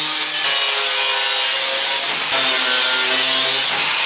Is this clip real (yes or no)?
yes